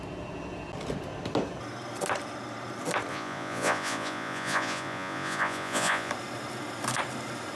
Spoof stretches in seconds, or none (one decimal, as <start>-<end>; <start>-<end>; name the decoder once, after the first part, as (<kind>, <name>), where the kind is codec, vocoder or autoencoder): 3.1-6.1 (vocoder, Vocos)